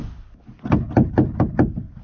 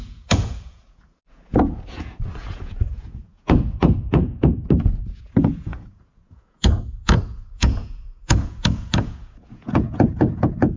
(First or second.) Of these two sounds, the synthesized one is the second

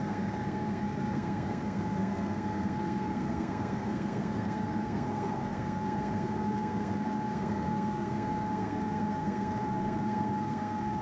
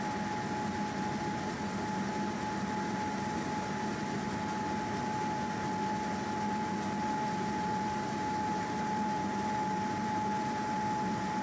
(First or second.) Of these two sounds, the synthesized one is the first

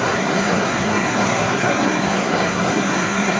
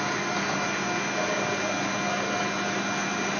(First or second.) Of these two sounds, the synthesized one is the first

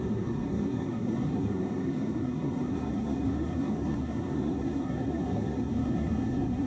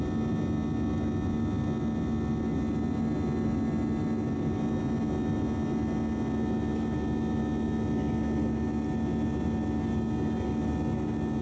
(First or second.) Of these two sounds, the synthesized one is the first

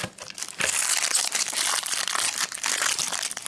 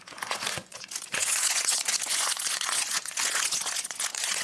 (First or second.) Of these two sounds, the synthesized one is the second